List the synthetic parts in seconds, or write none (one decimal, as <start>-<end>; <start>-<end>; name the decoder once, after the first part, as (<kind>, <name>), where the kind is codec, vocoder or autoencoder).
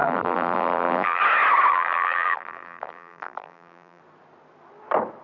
0.0-1.2 (vocoder, BigVGAN v2); 1.7-4.0